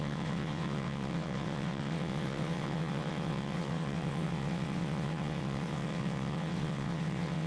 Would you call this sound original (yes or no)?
no